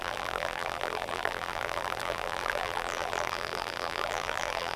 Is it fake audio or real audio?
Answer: fake